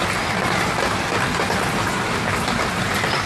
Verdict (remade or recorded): recorded